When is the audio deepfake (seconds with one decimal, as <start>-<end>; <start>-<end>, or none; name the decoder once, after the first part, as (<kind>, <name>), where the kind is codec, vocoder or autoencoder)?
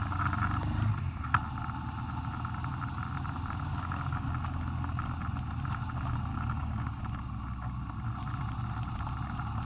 3.7-4.3 (codec, DAC); 6.3-7.0